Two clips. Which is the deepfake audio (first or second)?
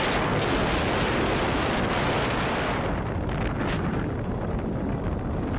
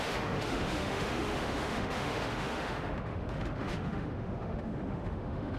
second